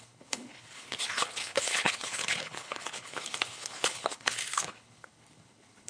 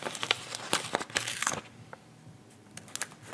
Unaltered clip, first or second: second